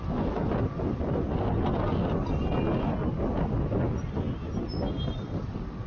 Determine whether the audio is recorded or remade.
recorded